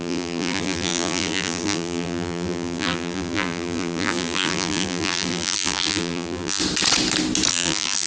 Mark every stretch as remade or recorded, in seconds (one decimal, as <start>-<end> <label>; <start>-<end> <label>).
0.0-6.6 remade; 6.6-7.5 recorded; 7.5-8.1 remade